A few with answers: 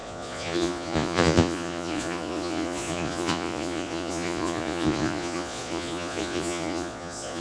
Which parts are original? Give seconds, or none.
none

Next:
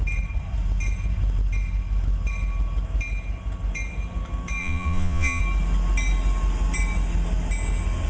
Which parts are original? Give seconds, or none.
0.0-4.6; 5.4-8.1